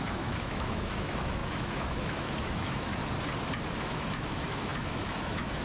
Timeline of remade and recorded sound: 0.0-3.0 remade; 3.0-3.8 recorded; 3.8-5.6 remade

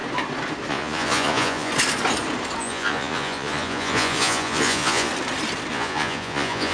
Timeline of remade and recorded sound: 0.0-0.7 recorded; 0.7-1.7 remade; 1.7-2.6 recorded; 2.6-5.1 remade; 5.1-5.7 recorded; 5.7-6.7 remade

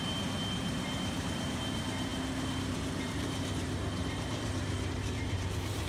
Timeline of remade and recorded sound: 0.0-2.1 remade; 2.1-2.7 recorded; 2.7-5.9 remade